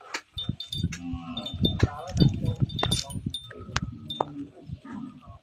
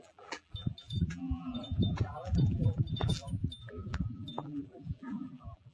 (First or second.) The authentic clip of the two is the first